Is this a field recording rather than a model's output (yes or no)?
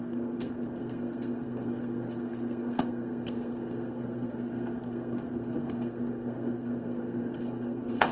no